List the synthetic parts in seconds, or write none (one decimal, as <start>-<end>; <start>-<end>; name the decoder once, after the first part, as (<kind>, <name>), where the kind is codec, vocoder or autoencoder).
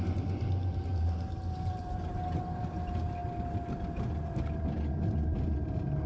none